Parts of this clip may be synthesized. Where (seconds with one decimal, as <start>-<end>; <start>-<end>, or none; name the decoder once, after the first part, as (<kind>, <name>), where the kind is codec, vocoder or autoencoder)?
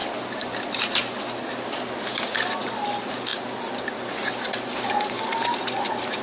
none